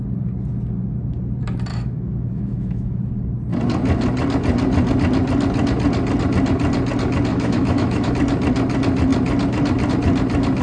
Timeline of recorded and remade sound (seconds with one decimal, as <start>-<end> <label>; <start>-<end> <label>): 0.0-1.7 recorded; 1.7-3.1 remade; 3.1-7.3 recorded; 7.3-8.1 remade; 8.1-10.6 recorded